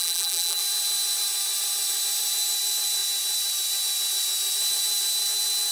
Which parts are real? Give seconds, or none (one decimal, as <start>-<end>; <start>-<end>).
0.6-5.7

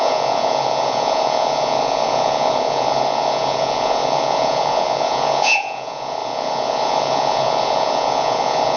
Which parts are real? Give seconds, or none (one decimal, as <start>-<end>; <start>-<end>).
none